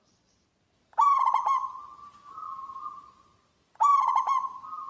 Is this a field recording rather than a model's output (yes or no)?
yes